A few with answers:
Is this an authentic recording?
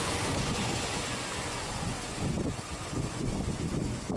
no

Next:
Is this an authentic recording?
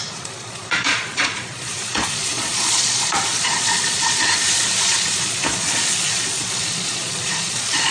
no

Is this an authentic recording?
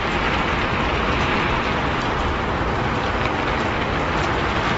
yes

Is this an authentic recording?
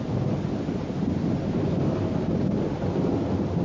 yes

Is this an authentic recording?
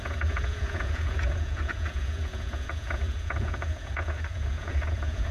no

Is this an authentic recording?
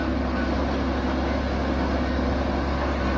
yes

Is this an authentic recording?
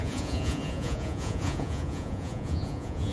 no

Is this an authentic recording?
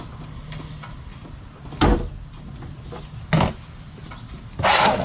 yes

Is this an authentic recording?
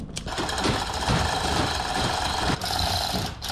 yes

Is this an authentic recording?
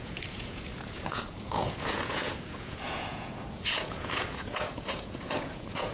no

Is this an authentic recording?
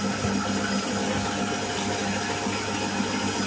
yes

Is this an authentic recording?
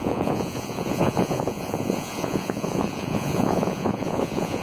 no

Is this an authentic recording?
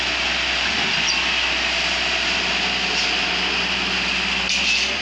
yes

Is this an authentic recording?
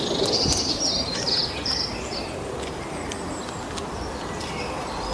yes